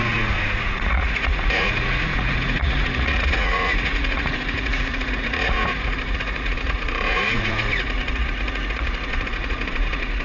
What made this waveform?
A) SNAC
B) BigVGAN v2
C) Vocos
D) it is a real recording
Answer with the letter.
C